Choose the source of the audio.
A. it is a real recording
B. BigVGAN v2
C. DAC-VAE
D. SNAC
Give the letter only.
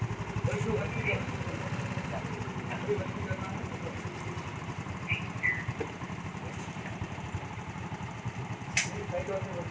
A